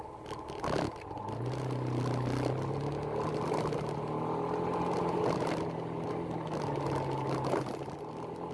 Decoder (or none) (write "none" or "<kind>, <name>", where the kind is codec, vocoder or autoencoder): none